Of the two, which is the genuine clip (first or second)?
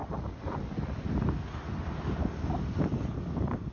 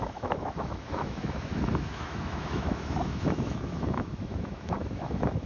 first